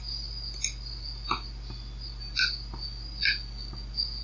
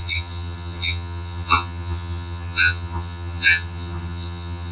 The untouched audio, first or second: first